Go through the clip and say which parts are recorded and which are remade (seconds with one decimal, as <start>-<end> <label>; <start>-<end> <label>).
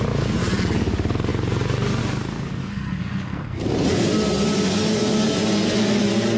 0.0-2.6 recorded; 2.6-3.6 remade; 3.6-6.4 recorded